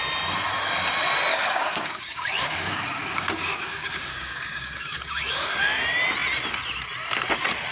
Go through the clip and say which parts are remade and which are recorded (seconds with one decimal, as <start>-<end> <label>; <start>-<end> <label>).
0.0-1.3 recorded; 1.3-5.6 remade; 5.6-7.7 recorded

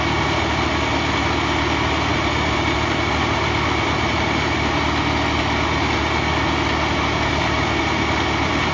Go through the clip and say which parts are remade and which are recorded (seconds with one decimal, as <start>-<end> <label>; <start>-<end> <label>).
0.0-8.7 recorded